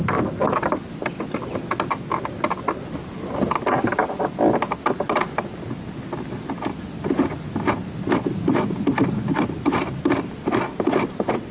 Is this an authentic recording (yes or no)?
yes